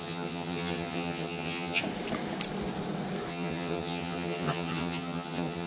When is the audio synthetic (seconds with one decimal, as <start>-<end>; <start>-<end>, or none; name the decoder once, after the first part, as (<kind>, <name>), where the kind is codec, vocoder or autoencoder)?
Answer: 0.0-1.8 (vocoder, HiFi-GAN); 3.3-5.7